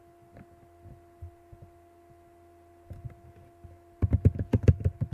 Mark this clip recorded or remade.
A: recorded